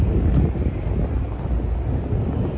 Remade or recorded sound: recorded